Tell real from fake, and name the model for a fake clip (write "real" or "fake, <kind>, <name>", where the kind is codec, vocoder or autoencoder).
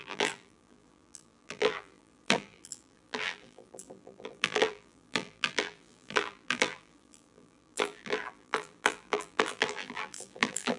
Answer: fake, vocoder, BigVGAN v2